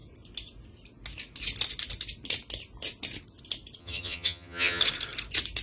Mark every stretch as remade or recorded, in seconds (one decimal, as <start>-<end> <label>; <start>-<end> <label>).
0.0-3.8 recorded; 3.8-4.8 remade; 4.8-5.6 recorded